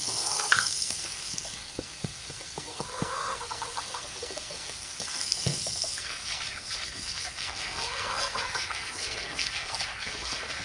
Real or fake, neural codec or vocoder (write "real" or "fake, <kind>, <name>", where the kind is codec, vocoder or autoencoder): fake, codec, SNAC